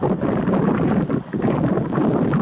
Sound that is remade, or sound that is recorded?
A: recorded